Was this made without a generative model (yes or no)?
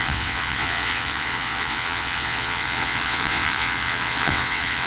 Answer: no